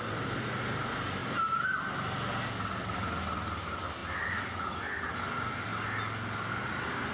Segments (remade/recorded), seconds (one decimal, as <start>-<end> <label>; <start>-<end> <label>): 0.0-7.1 recorded